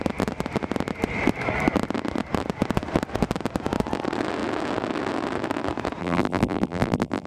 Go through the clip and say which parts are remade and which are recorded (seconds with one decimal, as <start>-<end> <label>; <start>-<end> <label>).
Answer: 0.0-6.0 recorded; 6.0-7.3 remade